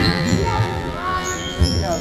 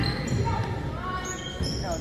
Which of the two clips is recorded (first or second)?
second